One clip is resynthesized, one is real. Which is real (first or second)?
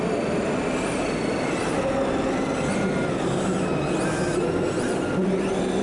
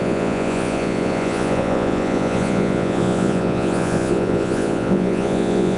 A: first